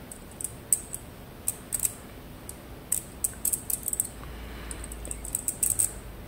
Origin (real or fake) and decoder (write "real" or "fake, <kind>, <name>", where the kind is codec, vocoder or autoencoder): real